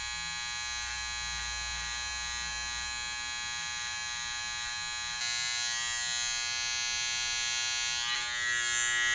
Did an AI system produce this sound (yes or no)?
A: no